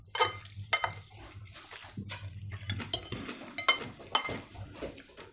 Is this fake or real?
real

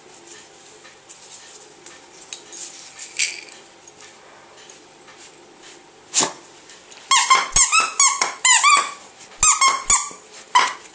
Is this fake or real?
real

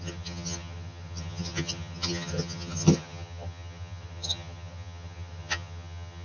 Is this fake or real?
fake